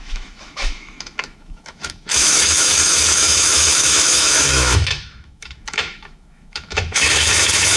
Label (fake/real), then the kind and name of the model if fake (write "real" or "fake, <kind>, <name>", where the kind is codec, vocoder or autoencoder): fake, autoencoder, DAC-VAE